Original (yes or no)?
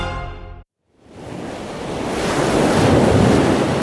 yes